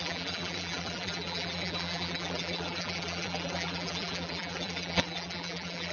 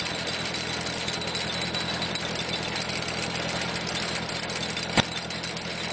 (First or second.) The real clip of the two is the second